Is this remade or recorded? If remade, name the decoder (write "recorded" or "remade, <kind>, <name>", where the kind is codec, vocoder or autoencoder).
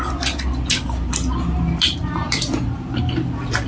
recorded